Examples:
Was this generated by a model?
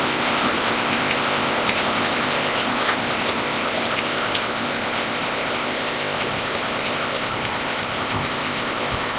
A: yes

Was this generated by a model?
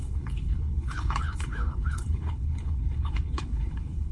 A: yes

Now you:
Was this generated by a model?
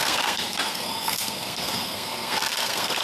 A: yes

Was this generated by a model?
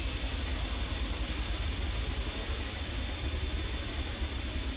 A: no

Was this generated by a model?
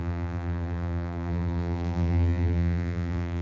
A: yes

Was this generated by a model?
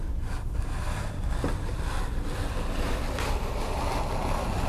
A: no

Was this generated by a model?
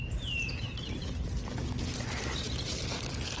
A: no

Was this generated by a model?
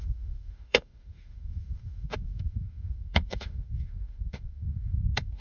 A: yes